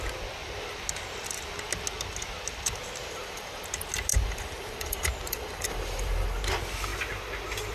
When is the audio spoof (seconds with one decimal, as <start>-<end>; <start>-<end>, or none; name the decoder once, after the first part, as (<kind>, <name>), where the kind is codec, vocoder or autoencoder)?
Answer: 3.0-3.6 (vocoder, BigVGAN v2); 4.1-6.4